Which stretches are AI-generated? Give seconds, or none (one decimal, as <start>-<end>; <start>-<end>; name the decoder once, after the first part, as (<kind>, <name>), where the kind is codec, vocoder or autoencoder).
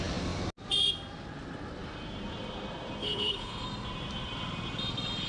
3.0-3.6 (codec, HILCodec)